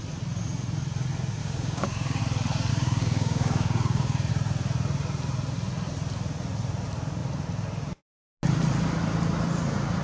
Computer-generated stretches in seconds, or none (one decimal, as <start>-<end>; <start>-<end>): 1.4-2.2; 2.7-4.3

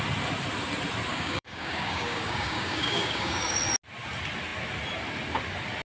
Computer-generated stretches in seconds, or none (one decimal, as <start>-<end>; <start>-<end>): 1.1-3.6

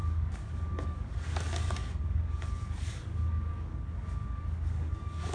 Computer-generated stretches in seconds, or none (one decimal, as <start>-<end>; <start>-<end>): 0.0-5.3

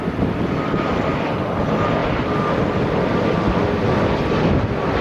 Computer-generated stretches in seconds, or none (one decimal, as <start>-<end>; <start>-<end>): none

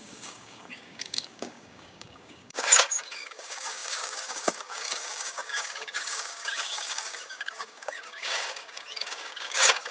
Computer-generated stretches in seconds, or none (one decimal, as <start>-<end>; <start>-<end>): 0.0-9.9

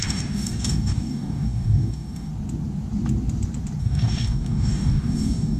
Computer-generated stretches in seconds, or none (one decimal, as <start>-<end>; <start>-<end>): 0.0-2.3; 3.8-5.6

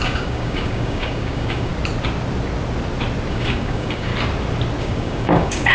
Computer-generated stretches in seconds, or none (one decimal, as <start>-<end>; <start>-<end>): 0.0-1.7; 3.3-4.1; 4.8-5.7

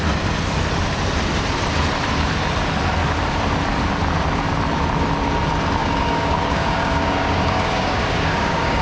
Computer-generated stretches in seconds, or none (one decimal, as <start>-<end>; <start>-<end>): 5.8-8.8